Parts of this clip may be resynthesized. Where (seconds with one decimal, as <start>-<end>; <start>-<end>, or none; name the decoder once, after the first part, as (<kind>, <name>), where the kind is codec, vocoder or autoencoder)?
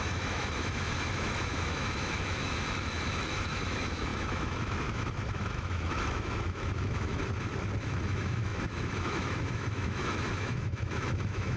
0.0-7.2 (autoencoder, DAC-VAE); 7.8-11.6